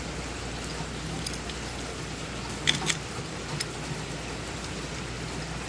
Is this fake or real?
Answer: real